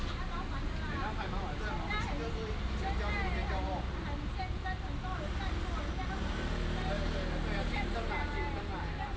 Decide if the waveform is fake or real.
real